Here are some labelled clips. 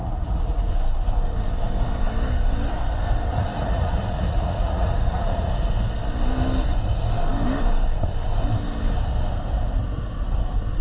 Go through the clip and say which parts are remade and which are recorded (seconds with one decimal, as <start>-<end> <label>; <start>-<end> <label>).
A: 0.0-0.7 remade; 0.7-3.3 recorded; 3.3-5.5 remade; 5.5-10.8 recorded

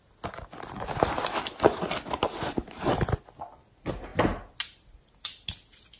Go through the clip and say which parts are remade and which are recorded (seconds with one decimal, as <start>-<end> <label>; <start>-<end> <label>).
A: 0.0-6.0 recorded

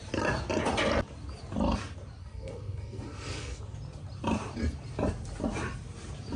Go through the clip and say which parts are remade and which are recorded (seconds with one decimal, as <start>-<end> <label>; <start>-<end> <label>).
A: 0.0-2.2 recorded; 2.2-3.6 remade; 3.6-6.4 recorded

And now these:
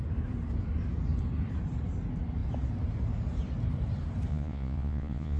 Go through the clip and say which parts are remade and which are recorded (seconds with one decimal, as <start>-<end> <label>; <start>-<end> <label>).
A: 0.0-4.3 recorded; 4.3-5.4 remade